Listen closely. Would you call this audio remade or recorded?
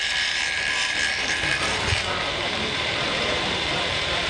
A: remade